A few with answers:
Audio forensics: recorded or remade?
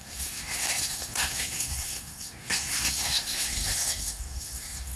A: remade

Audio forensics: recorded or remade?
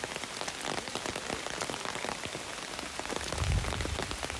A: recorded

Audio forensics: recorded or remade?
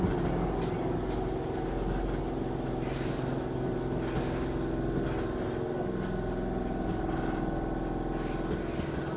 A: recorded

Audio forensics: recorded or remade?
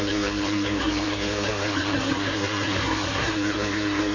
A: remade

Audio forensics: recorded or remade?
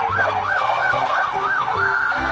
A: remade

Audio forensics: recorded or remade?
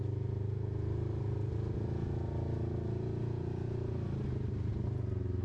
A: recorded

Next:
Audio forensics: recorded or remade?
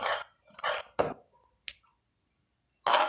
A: recorded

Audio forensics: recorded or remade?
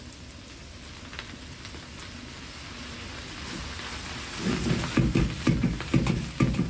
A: recorded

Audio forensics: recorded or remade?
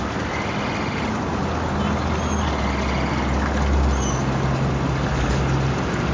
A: recorded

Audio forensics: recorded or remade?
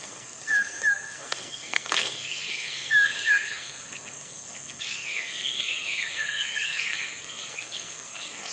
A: remade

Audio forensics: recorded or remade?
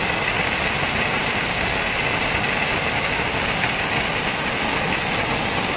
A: recorded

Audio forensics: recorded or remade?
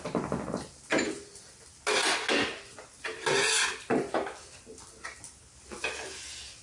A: recorded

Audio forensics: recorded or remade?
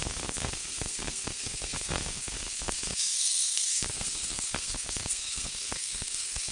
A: remade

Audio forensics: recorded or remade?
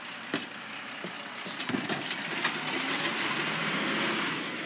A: recorded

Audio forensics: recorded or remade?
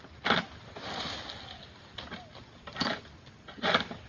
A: recorded